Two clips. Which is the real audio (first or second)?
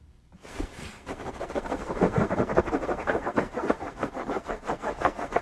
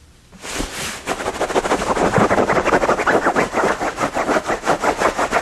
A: second